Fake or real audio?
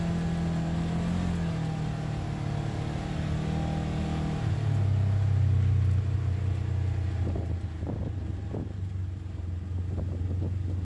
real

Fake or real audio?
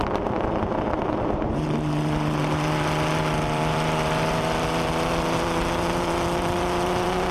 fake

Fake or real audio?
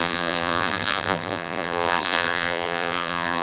fake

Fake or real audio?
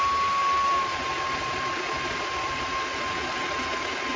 real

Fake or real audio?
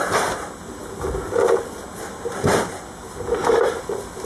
real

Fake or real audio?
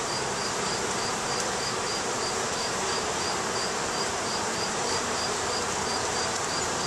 fake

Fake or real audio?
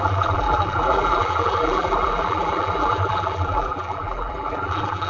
fake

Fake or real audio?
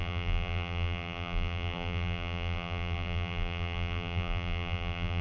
fake